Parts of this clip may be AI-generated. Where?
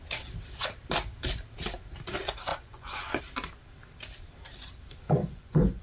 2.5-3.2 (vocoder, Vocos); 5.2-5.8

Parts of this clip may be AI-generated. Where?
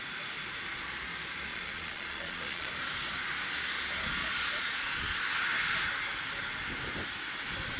1.5-2.7 (vocoder, Vocos); 4.2-5.2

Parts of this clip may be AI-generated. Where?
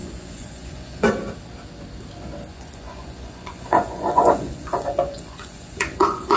0.0-1.1 (vocoder, Vocos); 2.5-6.4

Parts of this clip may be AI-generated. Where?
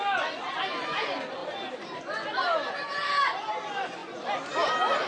none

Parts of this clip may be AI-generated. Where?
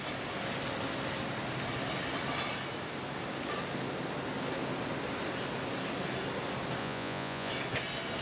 6.8-7.5 (vocoder, Vocos)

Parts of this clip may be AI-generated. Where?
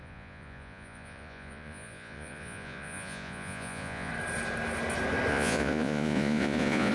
0.0-4.1 (vocoder, Vocos); 5.3-6.9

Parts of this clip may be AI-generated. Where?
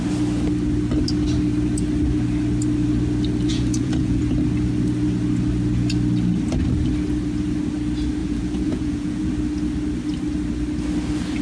3.5-4.2 (vocoder, Vocos); 8.2-9.3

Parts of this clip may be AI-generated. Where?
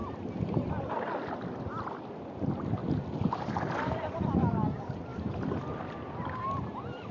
none